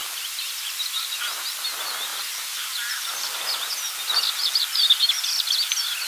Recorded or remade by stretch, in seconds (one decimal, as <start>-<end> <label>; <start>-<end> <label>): 0.0-0.7 remade; 0.7-2.1 recorded; 2.1-3.5 remade; 3.5-6.1 recorded